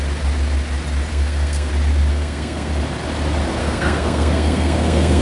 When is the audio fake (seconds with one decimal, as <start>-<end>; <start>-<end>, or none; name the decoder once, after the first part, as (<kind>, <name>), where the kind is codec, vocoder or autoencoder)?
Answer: 1.1-1.7 (codec, SNAC); 2.1-2.7; 3.6-5.2